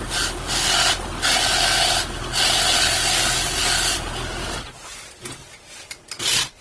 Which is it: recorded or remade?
recorded